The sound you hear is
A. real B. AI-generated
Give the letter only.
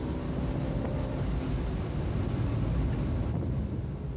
A